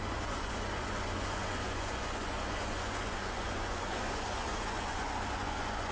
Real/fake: fake